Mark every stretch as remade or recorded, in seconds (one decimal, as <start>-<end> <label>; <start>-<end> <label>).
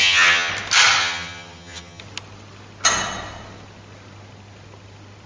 0.0-0.5 remade; 0.5-1.0 recorded; 1.0-2.0 remade; 2.0-5.3 recorded